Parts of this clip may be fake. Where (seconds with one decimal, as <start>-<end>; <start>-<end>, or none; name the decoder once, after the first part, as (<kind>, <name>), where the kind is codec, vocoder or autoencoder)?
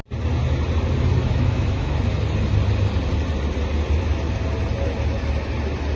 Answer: 1.2-2.1 (autoencoder, DAC-VAE)